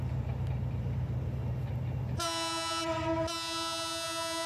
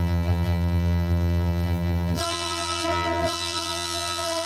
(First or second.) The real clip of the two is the first